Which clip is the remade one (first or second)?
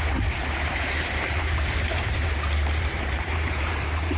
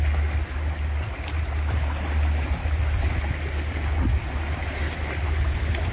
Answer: first